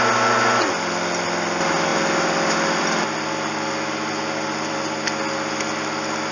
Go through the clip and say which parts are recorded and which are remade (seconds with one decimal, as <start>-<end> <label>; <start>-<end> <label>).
0.0-6.3 recorded